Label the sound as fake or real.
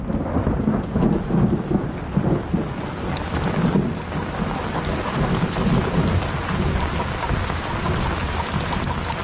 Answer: real